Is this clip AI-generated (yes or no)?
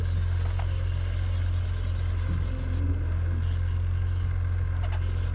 no